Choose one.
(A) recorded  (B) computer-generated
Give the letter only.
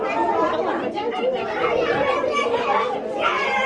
A